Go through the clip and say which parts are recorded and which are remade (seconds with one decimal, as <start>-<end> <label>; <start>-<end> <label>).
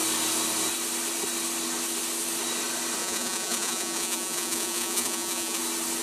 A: 0.0-3.0 recorded; 3.0-5.6 remade; 5.6-6.0 recorded